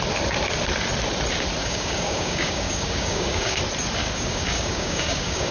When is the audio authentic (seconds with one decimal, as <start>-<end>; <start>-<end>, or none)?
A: 0.0-1.6; 3.6-4.0

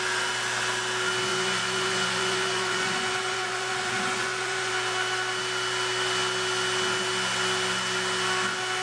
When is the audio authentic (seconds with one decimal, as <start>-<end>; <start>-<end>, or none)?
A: 0.0-1.3; 4.7-8.8

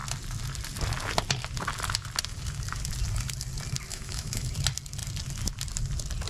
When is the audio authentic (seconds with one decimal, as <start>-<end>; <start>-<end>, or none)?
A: 0.0-3.9; 4.5-6.3

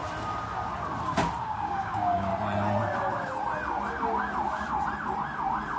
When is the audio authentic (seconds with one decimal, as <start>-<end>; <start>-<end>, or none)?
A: 0.0-1.4; 2.3-5.8

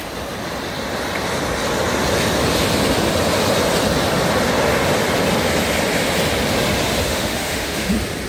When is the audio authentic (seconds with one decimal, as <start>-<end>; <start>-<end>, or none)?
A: 0.0-7.1; 7.9-8.3

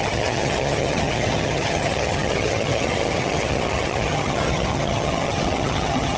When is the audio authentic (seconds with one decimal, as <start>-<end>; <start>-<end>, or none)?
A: none